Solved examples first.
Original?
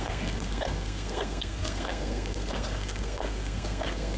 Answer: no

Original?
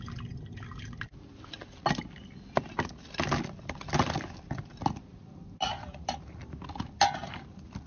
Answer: yes